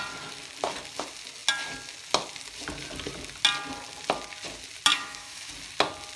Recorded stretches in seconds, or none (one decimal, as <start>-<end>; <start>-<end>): 0.0-4.9; 5.5-6.2